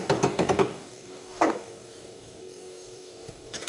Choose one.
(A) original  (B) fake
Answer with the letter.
B